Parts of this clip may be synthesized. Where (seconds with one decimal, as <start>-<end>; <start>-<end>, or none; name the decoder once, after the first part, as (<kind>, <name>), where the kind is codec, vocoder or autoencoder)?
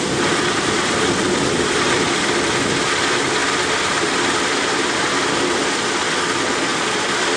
3.4-4.8 (vocoder, BigVGAN v2); 6.7-7.4